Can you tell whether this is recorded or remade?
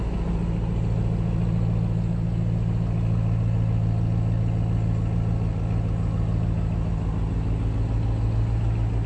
recorded